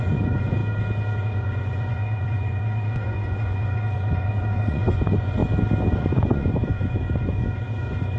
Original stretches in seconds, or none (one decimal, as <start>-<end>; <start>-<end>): 0.6-1.2; 5.4-5.9